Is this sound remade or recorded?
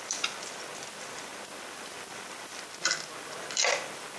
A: recorded